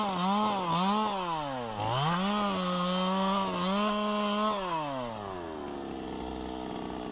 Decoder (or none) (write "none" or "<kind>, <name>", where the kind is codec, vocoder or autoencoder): none